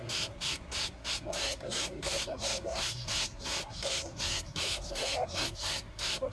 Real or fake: fake